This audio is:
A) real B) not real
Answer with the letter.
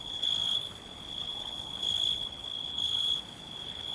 B